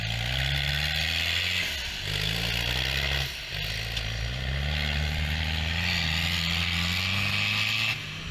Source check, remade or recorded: recorded